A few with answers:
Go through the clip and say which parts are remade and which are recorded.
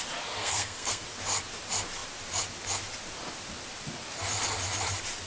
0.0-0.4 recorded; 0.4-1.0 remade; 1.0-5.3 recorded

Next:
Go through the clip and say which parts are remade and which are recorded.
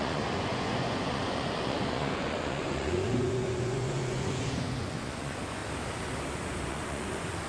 0.0-5.6 remade; 5.6-6.7 recorded; 6.7-7.5 remade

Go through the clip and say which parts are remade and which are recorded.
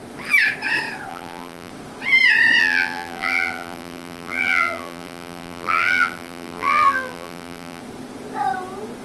0.0-1.1 recorded; 1.1-1.7 remade; 1.7-2.6 recorded; 2.6-7.8 remade; 7.8-9.0 recorded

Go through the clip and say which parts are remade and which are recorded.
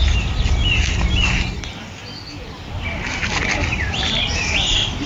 0.0-3.2 recorded; 3.2-3.8 remade; 3.8-5.1 recorded